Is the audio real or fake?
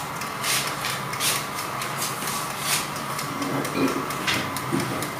real